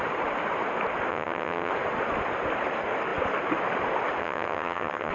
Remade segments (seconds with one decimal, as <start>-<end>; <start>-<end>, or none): 1.1-1.7; 4.2-5.1